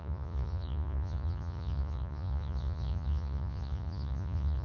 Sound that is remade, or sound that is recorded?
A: remade